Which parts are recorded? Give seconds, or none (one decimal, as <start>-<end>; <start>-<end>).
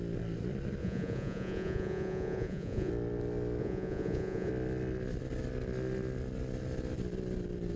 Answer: 0.0-0.8; 2.9-3.6; 4.5-7.8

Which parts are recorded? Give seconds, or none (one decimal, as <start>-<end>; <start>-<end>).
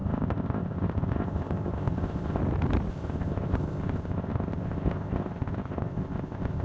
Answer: 2.4-2.9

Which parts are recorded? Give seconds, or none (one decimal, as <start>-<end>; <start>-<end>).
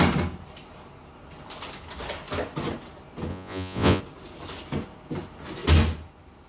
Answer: 0.0-3.3; 4.0-6.5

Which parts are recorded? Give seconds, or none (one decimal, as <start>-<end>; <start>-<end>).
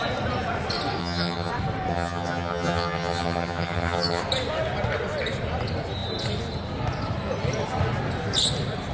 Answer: 0.0-1.0; 1.5-1.9; 4.2-8.9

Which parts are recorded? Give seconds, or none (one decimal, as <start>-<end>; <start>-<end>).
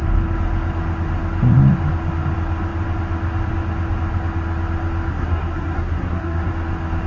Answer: 0.0-5.1; 6.5-7.1